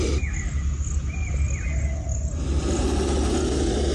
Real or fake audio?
real